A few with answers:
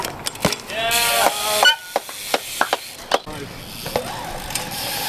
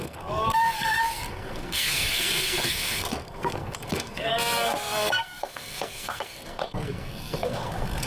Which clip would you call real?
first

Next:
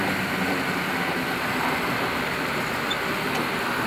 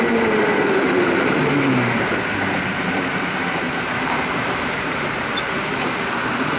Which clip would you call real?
first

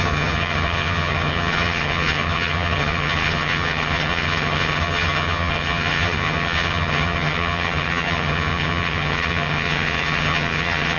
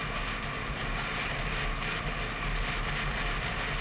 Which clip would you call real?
second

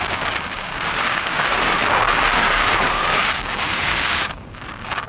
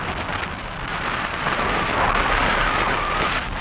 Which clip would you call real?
second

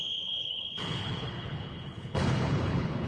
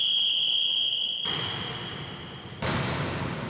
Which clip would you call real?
second